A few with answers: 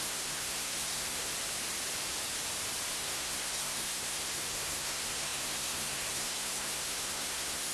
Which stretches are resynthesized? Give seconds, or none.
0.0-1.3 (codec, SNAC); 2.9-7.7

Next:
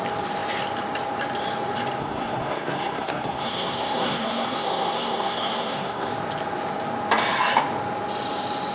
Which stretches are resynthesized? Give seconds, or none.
2.0-6.1 (codec, SNAC)